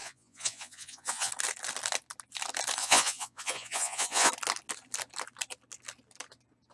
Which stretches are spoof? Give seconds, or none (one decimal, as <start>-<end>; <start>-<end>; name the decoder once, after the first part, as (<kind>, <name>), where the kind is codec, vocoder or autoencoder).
0.0-1.3 (vocoder, Vocos); 2.8-4.3